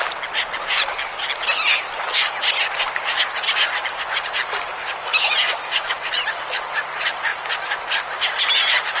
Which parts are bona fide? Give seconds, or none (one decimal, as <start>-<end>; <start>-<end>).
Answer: 0.0-9.0